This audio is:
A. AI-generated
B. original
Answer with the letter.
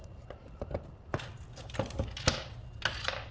B